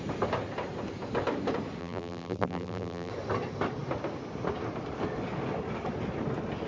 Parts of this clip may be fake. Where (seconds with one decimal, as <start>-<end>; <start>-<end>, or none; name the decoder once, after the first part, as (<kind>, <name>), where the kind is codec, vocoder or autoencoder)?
1.8-3.1 (vocoder, BigVGAN v2)